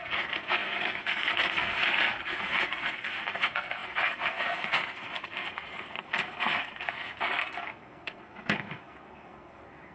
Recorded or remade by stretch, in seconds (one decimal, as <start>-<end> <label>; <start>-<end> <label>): 0.0-9.9 remade